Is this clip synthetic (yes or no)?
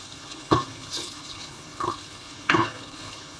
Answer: yes